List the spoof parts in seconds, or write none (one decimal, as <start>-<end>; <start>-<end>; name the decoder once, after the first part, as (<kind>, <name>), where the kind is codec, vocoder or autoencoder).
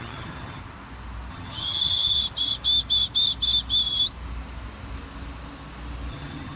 0.0-0.6 (vocoder, HiFi-GAN); 1.3-2.2; 6.1-6.6